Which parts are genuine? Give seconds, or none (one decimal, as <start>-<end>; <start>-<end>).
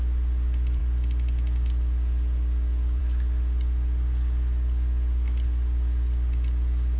0.0-7.0